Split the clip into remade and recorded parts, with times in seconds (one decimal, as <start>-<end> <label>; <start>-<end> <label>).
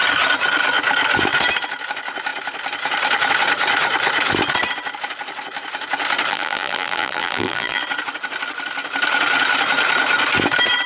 0.0-6.3 recorded; 6.3-7.8 remade; 7.8-10.9 recorded